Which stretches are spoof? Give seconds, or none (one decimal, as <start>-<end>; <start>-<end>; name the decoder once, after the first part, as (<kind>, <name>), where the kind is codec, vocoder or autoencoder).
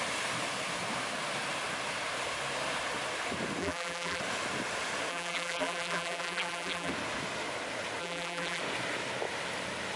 3.6-4.2 (vocoder, BigVGAN v2); 5.1-6.9; 8.0-8.6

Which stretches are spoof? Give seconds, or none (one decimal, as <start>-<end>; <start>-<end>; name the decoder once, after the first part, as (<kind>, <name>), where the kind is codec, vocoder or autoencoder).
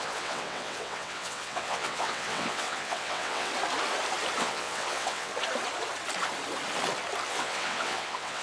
0.0-3.5 (vocoder, WaveNeXt); 4.4-5.3; 7.3-8.4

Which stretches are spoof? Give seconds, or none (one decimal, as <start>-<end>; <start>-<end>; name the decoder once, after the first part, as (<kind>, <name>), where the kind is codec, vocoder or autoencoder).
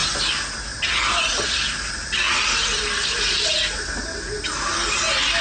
none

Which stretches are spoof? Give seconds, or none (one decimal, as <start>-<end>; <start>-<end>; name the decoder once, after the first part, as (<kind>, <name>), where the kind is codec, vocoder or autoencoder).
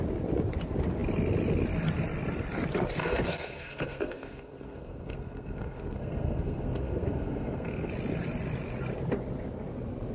3.0-7.9 (codec, SNAC)